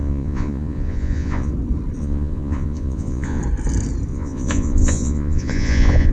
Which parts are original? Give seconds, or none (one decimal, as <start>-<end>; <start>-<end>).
1.5-2.0; 3.4-4.1